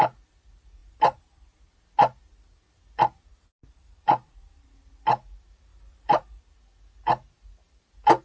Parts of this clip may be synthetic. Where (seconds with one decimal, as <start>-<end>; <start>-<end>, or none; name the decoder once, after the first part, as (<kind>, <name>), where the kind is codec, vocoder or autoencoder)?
0.8-1.6 (vocoder, BigVGAN v2); 3.3-4.7; 5.7-6.4